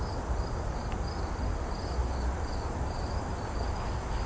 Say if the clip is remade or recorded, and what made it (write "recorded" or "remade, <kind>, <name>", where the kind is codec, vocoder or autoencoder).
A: recorded